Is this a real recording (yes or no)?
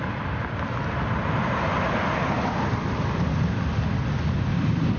yes